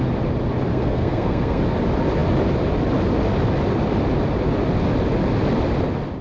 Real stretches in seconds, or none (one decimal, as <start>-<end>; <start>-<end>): 0.0-0.7; 1.6-6.2